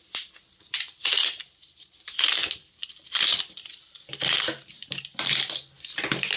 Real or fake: fake